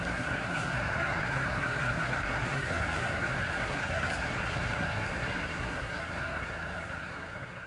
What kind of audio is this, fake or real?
fake